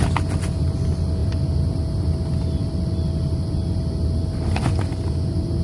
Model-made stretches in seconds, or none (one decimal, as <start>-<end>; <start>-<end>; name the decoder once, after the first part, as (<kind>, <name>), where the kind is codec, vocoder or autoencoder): none